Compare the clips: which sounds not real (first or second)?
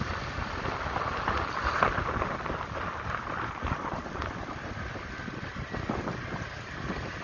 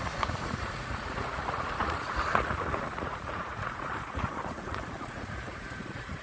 second